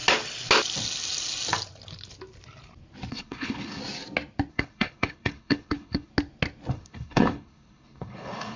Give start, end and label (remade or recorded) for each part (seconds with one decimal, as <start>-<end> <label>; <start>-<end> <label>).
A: 0.0-3.1 recorded; 3.1-3.8 remade; 3.8-4.5 recorded; 4.5-6.1 remade; 6.1-6.7 recorded; 6.7-8.6 remade

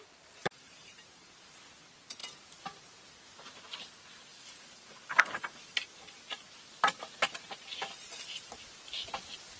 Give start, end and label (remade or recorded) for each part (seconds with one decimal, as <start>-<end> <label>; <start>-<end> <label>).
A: 0.0-0.4 recorded; 0.4-1.6 remade; 1.6-4.3 recorded; 4.3-6.2 remade; 6.2-7.7 recorded; 7.7-8.7 remade; 8.7-9.6 recorded

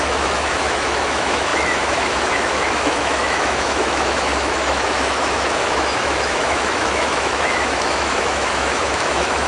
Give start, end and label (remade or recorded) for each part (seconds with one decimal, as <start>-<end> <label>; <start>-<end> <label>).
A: 0.0-9.5 remade

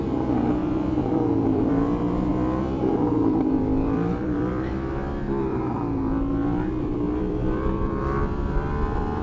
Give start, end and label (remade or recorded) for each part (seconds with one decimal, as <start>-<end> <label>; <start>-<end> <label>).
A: 0.0-0.6 recorded; 0.6-1.7 remade; 1.7-2.3 recorded; 2.3-4.7 remade; 4.7-6.4 recorded; 6.4-9.2 remade

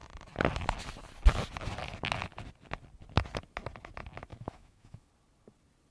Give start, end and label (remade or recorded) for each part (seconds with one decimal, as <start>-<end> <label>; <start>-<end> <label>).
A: 0.0-4.3 recorded; 4.3-5.1 remade; 5.1-5.9 recorded

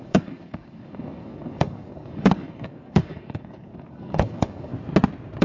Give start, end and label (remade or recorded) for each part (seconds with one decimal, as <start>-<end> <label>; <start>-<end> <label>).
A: 0.0-4.7 remade; 4.7-5.4 recorded

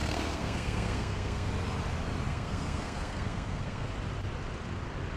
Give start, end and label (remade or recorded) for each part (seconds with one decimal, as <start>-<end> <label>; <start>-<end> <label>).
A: 0.0-1.5 remade; 1.5-2.3 recorded; 2.3-3.9 remade; 3.9-5.2 recorded